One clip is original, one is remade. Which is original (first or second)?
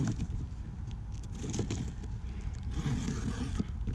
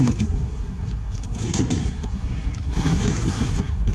first